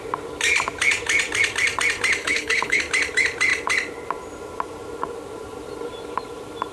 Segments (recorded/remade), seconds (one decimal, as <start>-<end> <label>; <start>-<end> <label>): 0.0-2.2 recorded; 2.2-2.8 remade; 2.8-6.7 recorded